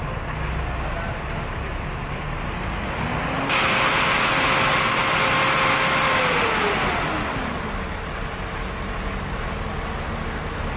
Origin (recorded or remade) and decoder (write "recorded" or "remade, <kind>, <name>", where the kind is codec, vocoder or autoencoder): recorded